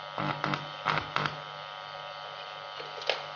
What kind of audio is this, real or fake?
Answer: real